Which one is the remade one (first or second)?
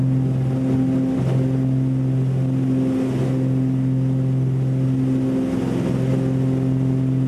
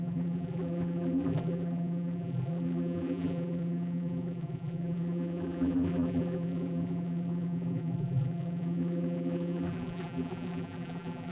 second